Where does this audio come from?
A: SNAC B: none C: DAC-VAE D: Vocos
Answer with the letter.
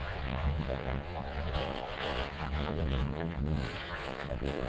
D